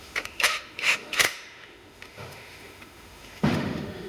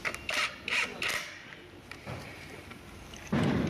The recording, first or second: second